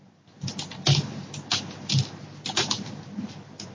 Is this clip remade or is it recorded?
recorded